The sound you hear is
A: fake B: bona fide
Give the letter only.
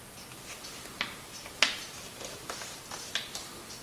B